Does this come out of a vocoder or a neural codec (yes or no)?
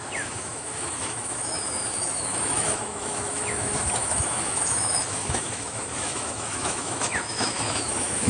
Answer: yes